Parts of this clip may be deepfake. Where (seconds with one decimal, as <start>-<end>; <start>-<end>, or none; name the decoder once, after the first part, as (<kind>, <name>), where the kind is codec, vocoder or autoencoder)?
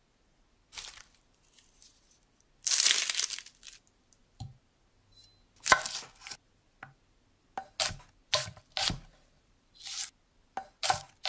8.2-9.7 (vocoder, BigVGAN v2)